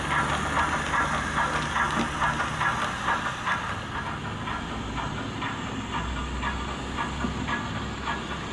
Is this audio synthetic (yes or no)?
no